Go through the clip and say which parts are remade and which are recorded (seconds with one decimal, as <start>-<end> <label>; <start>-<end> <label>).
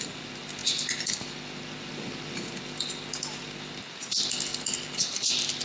0.0-5.6 recorded